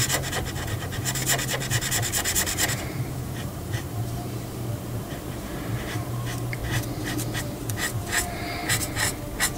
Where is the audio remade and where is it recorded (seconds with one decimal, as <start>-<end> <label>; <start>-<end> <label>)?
0.0-1.2 remade; 1.2-2.6 recorded; 2.6-6.6 remade; 6.6-7.4 recorded; 7.4-8.6 remade; 8.6-9.6 recorded